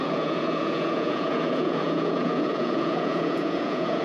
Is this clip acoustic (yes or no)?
no